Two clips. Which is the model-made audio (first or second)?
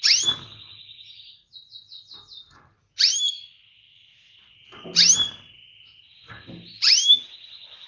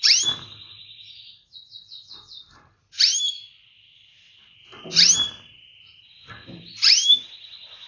second